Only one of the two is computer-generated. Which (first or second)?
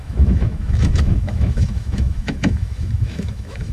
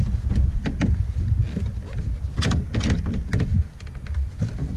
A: first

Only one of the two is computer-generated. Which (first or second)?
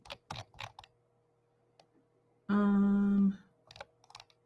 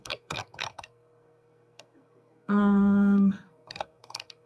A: second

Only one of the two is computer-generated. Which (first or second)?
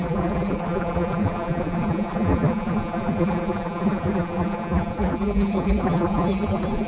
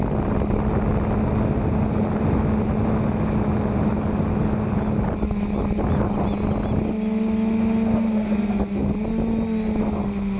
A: first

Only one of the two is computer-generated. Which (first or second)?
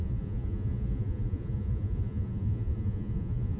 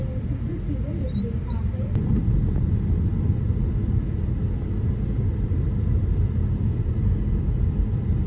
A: first